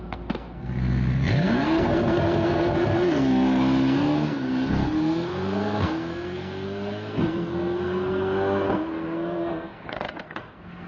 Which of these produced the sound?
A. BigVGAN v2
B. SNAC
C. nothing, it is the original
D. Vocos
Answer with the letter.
B